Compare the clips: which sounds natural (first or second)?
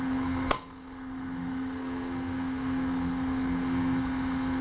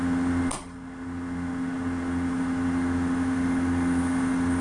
second